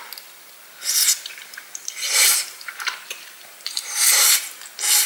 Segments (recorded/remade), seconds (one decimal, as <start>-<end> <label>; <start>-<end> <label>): 0.0-1.4 recorded; 1.4-4.5 remade; 4.5-5.1 recorded